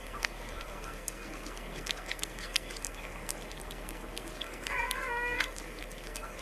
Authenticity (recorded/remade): remade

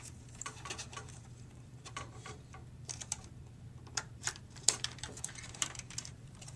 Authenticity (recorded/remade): remade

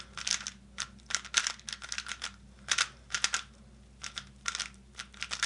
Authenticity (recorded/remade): recorded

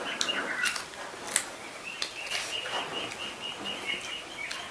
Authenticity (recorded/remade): recorded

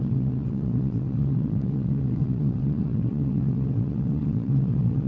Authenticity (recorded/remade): remade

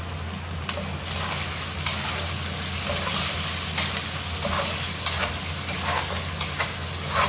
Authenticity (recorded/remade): recorded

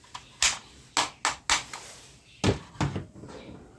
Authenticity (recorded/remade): recorded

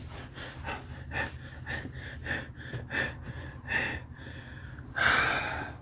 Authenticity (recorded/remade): recorded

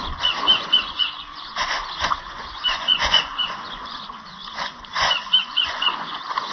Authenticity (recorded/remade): remade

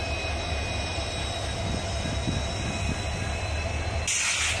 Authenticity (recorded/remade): recorded